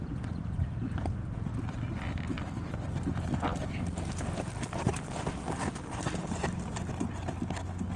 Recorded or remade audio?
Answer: recorded